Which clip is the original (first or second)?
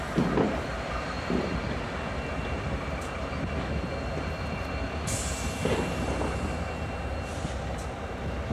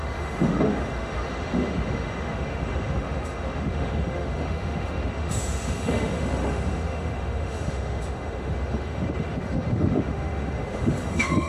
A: first